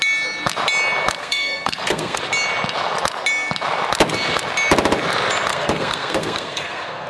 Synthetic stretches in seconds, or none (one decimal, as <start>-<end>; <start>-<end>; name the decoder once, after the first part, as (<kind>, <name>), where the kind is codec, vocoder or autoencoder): 1.2-2.2 (codec, SNAC); 5.5-7.1